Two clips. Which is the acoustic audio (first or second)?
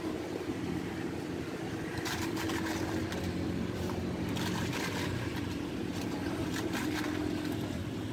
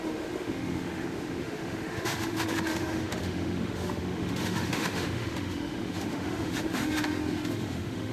first